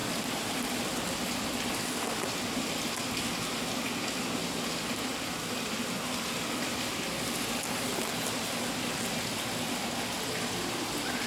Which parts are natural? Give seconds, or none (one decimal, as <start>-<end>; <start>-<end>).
0.0-11.3